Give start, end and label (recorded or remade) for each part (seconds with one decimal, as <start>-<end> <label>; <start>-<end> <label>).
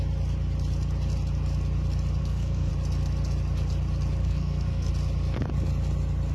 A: 0.0-2.2 recorded; 2.2-2.7 remade; 2.7-4.2 recorded; 4.2-4.9 remade; 4.9-6.3 recorded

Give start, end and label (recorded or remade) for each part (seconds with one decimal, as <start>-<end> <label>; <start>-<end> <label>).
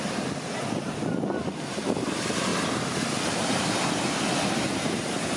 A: 0.0-5.4 recorded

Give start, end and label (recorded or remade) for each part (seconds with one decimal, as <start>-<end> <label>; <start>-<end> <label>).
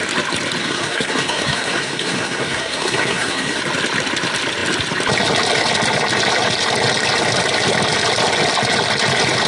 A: 0.0-0.6 recorded; 0.6-3.6 remade; 3.6-9.5 recorded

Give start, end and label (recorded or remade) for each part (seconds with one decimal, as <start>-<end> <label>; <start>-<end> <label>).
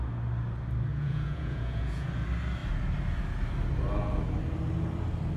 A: 0.0-0.9 recorded; 0.9-2.1 remade; 2.1-5.4 recorded